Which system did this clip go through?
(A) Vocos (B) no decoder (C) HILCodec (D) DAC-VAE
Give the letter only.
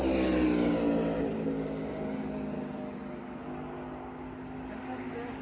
B